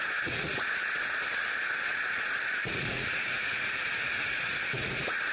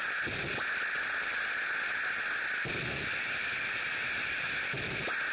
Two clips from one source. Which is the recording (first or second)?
second